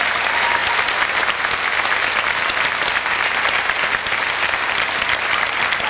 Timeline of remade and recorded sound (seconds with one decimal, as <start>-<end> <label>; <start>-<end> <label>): 0.0-5.9 recorded